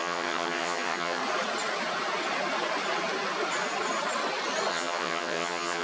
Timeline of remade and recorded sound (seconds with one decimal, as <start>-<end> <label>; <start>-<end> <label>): 0.0-1.2 remade; 1.2-4.7 recorded; 4.7-5.8 remade